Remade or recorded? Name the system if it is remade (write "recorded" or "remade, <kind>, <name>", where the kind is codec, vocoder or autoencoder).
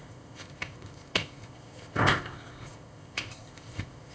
remade, codec, ZipCodec